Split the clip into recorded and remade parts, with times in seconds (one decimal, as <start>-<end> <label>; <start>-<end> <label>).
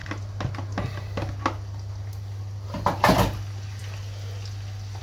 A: 0.0-5.0 recorded